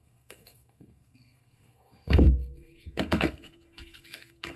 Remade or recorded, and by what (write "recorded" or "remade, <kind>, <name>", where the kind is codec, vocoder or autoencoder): remade, codec, SNAC